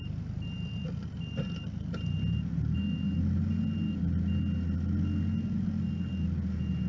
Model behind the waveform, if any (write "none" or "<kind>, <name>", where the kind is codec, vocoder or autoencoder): none